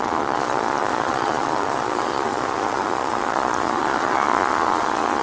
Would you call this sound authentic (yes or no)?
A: no